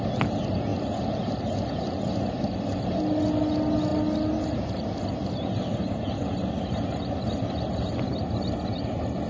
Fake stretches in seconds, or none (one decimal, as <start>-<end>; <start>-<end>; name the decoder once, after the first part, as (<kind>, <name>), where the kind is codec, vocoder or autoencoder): none